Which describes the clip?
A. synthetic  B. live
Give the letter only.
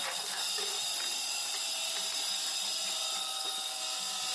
A